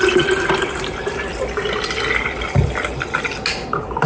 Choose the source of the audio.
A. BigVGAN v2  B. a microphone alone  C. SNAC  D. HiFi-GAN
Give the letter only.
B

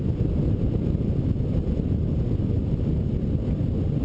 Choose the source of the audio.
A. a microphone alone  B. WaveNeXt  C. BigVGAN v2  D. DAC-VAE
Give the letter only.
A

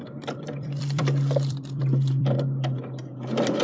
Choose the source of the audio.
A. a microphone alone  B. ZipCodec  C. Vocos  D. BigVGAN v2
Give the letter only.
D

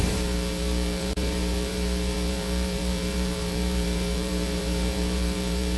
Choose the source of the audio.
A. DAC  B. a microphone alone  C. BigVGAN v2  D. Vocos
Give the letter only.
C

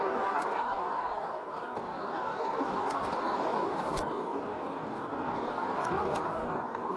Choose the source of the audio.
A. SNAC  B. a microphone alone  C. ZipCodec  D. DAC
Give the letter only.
D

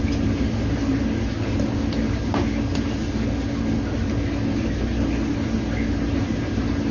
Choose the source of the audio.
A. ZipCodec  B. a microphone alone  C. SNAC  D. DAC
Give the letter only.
B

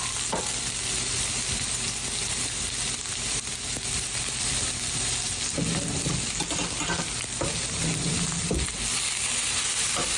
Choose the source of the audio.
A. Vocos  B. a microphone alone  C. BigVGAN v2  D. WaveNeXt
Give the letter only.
B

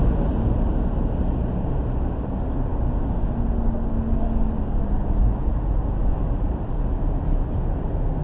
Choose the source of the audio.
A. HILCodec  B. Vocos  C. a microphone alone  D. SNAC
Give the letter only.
C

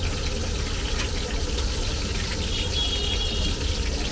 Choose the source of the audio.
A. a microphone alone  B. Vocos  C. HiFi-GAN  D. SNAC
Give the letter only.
A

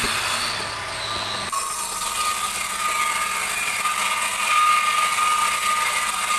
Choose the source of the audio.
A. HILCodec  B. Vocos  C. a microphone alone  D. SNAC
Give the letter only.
C